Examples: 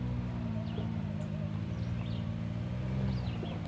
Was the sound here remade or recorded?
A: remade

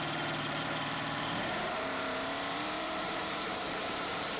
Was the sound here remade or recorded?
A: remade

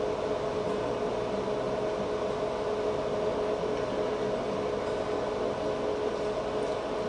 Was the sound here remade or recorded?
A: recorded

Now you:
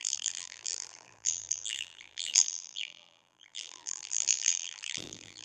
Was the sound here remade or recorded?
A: remade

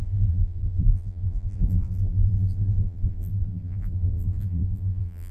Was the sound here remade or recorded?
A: remade